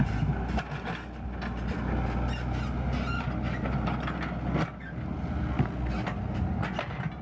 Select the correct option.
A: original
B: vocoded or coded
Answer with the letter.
A